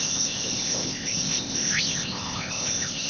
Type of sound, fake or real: fake